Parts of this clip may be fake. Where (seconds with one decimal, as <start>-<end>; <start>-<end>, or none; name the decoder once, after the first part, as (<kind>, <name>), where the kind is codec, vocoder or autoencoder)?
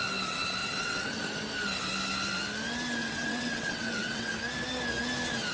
0.6-1.2 (vocoder, WaveNeXt); 3.0-4.3